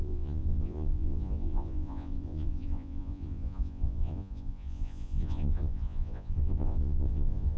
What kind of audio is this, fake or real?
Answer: fake